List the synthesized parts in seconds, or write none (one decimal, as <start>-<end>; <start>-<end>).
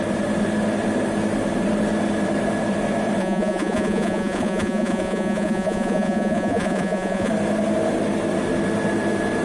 3.2-7.3